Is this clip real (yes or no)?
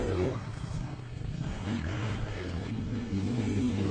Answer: no